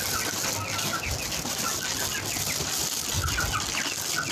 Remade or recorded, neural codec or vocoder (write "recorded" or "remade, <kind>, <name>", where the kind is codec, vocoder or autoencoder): recorded